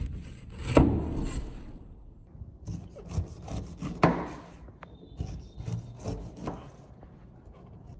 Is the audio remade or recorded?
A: recorded